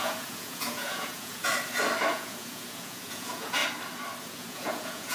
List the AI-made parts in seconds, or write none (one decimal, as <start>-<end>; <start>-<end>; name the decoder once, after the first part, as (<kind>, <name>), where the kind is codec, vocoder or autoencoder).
0.0-1.5 (vocoder, Vocos); 2.1-3.6; 4.2-5.1